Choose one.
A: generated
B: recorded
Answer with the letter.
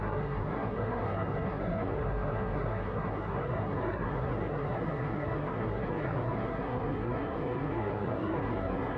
A